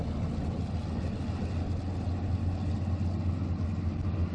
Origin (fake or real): real